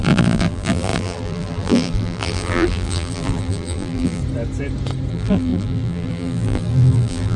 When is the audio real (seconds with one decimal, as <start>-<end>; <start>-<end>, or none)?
4.2-5.1